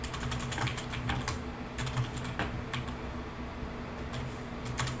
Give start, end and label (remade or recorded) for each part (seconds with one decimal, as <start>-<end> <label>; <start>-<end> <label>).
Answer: 0.0-5.0 recorded